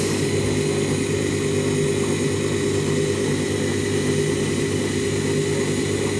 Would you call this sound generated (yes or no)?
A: no